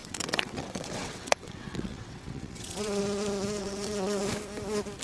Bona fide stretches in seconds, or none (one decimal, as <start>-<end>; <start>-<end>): 3.0-3.6; 4.2-5.0